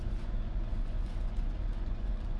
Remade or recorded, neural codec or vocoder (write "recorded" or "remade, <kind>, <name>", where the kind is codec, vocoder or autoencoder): remade, vocoder, Vocos